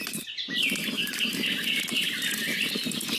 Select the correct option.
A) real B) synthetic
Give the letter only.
A